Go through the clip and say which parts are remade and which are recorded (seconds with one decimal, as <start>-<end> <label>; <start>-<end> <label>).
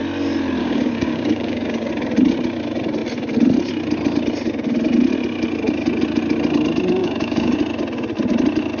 0.0-0.6 recorded; 0.6-1.9 remade; 1.9-7.0 recorded; 7.0-7.6 remade; 7.6-8.8 recorded